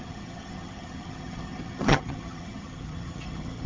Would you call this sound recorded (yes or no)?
no